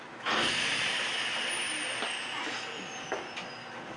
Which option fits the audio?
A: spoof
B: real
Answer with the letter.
B